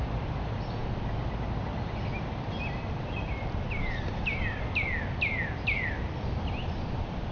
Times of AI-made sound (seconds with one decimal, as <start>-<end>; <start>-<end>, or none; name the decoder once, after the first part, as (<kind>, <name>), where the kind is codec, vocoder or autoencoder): none